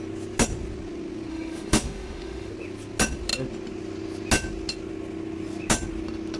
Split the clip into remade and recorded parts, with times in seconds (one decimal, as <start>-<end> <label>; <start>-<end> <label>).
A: 0.0-1.3 recorded; 1.3-2.5 remade; 2.5-6.4 recorded